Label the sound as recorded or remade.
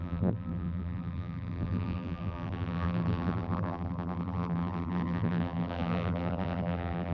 remade